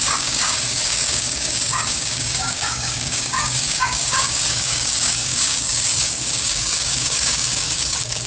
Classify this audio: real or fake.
fake